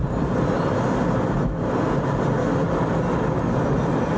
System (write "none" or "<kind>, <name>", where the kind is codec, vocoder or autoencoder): none